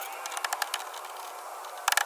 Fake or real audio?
real